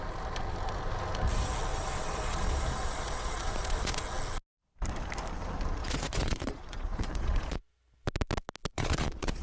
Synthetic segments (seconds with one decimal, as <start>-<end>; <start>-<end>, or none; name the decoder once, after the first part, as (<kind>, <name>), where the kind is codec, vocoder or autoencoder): 1.7-4.0 (vocoder, Vocos); 5.8-7.6; 8.7-9.4